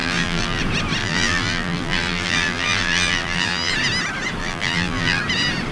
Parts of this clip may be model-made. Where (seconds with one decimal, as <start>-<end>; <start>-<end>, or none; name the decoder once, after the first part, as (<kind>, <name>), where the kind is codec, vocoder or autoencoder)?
0.0-0.6 (vocoder, BigVGAN v2); 1.0-3.7; 4.4-5.2